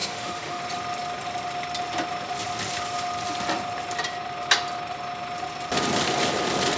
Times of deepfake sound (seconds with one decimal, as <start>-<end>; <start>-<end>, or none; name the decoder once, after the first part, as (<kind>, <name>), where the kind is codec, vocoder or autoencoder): 0.0-0.6 (autoencoder, DAC-VAE)